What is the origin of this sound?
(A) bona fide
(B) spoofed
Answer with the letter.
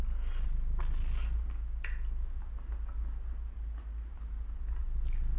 A